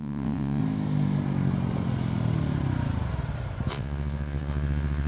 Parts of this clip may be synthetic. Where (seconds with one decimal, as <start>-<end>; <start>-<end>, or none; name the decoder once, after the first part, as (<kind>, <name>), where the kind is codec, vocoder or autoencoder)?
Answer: 0.0-0.6 (vocoder, WaveNeXt); 3.7-5.1